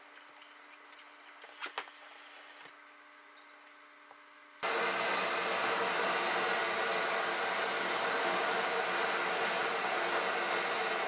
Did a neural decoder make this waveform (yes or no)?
no